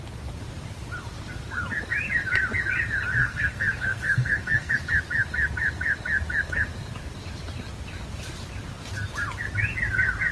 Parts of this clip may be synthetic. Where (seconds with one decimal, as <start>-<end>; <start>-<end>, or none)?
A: 3.2-4.7